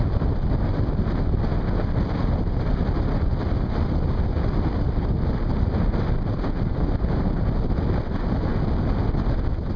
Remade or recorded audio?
recorded